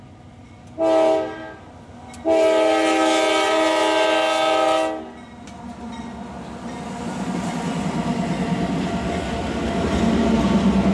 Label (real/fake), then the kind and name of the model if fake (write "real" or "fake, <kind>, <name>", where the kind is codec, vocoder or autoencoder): real